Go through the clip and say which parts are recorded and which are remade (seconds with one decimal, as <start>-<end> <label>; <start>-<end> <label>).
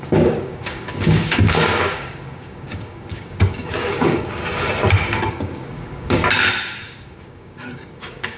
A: 0.0-4.4 remade; 4.4-5.3 recorded; 5.3-6.2 remade; 6.2-6.8 recorded; 6.8-8.4 remade